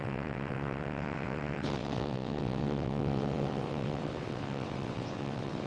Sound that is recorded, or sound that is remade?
remade